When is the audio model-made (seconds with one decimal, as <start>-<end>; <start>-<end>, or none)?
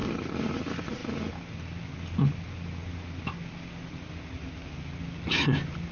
none